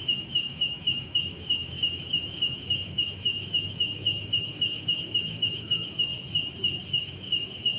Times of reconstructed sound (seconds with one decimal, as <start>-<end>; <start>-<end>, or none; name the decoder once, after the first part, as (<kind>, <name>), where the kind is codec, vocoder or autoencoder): 0.0-6.1 (autoencoder, DAC-VAE); 7.0-7.8